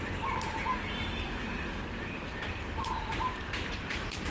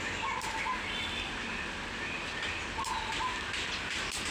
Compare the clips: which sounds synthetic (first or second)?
first